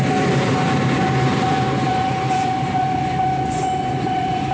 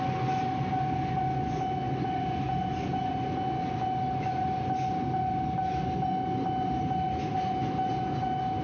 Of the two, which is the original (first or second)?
second